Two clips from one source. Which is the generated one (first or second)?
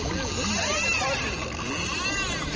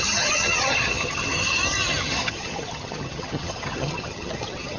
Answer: second